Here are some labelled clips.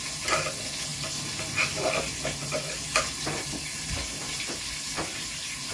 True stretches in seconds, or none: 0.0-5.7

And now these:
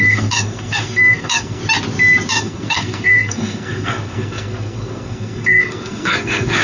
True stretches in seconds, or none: 1.6-2.3

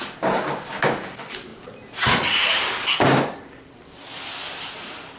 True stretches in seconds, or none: 0.0-5.2

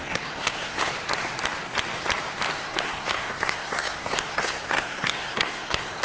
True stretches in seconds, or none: 0.9-2.6